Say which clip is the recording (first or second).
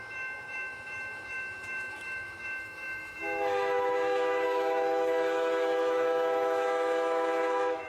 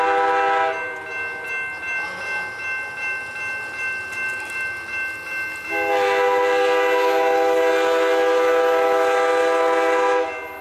second